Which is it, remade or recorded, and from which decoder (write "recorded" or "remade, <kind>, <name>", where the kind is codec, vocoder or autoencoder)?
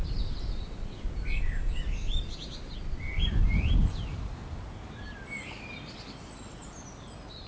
recorded